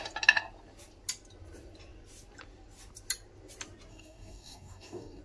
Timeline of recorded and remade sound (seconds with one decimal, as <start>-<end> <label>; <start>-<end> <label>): 0.0-3.9 recorded; 3.9-5.2 remade